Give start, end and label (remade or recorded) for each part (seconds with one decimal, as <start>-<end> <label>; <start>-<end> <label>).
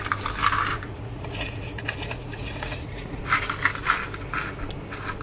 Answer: 0.0-0.7 recorded; 0.7-3.2 remade; 3.2-5.2 recorded